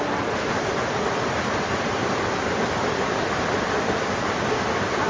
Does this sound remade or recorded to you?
recorded